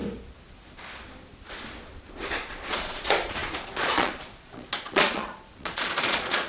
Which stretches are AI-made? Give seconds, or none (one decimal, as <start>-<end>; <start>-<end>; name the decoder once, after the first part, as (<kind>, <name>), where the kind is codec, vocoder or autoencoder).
2.1-6.5 (vocoder, Vocos)